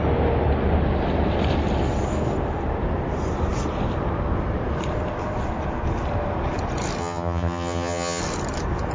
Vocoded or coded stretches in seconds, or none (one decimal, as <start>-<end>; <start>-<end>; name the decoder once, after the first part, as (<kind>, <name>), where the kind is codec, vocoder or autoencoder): 7.0-8.2 (vocoder, HiFi-GAN)